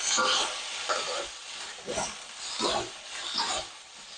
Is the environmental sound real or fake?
real